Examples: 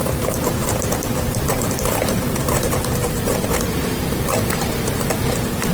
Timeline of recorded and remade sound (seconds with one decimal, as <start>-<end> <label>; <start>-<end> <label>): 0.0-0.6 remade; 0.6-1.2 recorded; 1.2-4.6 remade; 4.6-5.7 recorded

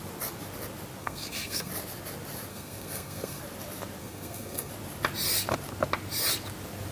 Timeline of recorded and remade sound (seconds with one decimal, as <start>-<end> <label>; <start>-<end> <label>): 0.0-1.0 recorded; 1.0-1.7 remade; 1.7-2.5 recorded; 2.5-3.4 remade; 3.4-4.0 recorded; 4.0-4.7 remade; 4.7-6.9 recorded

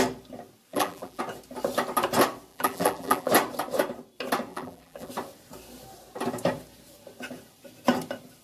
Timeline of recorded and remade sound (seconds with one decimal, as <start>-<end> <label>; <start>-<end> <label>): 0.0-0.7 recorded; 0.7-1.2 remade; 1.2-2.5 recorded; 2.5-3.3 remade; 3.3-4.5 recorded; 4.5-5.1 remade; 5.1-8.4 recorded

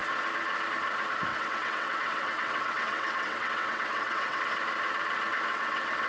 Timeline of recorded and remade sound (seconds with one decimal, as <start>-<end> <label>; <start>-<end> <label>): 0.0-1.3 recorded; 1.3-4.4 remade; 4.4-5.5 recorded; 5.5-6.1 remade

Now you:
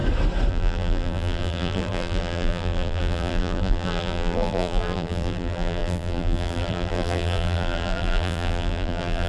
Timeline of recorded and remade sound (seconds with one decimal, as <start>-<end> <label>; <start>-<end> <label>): 0.0-0.5 recorded; 0.5-9.3 remade

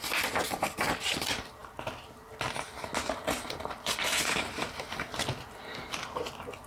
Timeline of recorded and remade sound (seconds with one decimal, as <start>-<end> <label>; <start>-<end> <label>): 0.0-6.7 recorded

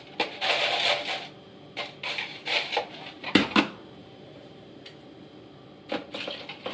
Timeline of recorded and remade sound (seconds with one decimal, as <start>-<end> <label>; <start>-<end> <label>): 0.0-2.3 recorded; 2.3-3.6 remade; 3.6-4.0 recorded; 4.0-4.9 remade; 4.9-6.7 recorded